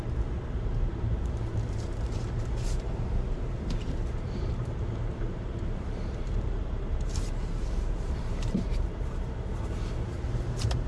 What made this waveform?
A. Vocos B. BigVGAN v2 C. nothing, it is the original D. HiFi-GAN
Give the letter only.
B